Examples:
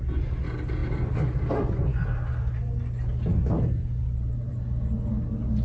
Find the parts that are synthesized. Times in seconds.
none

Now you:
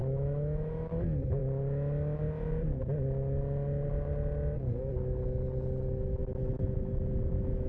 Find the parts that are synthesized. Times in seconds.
0.0-0.9 (autoencoder, DAC-VAE); 6.2-7.7

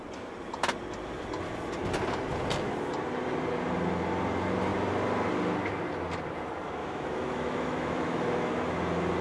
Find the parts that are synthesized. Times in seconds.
6.8-8.5 (autoencoder, DAC-VAE)

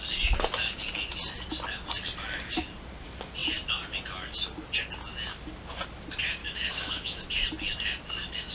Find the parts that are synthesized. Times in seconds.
6.4-7.2 (autoencoder, DAC-VAE)